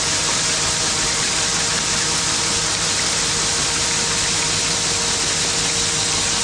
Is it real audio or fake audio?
real